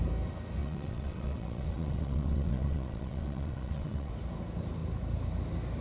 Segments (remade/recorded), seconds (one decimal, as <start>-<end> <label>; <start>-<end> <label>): 0.0-0.6 recorded; 0.6-4.1 remade; 4.1-5.8 recorded